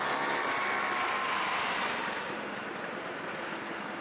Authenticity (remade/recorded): recorded